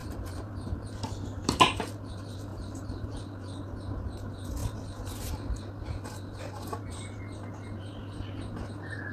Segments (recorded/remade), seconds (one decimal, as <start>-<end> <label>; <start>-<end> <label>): 0.0-2.1 remade; 2.1-2.5 recorded; 2.5-3.2 remade; 3.2-9.1 recorded